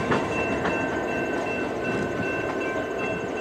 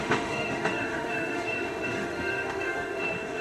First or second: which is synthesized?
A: second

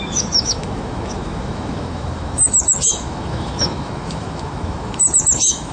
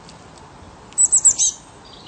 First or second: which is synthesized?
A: first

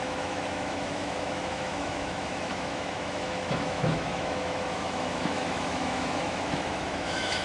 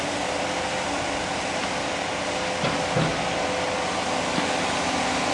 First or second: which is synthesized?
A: first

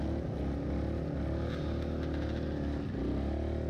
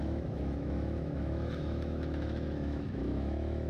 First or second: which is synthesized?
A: second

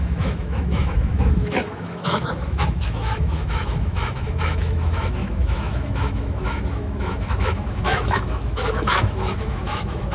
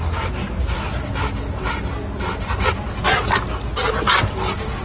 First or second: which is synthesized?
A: first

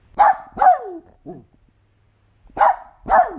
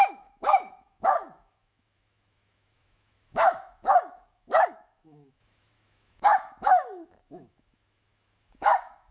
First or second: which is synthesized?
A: second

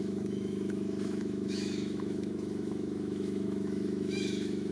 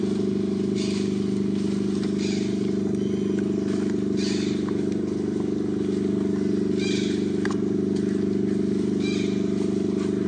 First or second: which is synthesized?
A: first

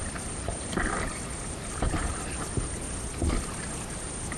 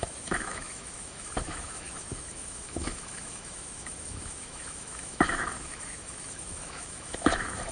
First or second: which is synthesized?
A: second